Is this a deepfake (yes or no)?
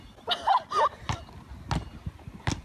no